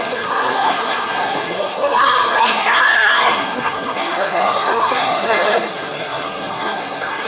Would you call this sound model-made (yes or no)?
yes